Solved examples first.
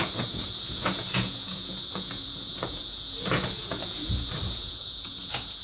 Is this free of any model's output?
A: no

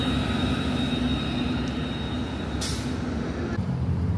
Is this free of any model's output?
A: yes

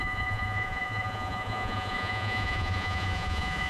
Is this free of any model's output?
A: no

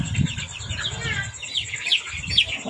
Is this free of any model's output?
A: yes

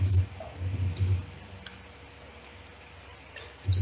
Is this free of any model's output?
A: yes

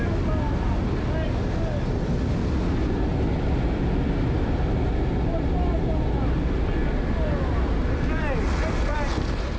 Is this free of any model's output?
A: yes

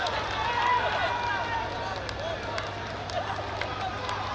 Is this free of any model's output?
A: yes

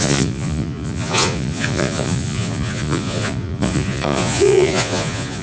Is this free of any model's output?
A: no